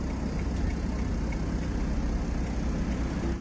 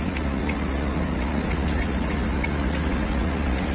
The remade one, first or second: second